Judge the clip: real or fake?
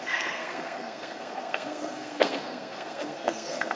fake